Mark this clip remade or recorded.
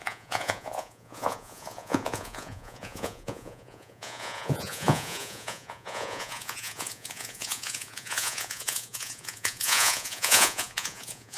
remade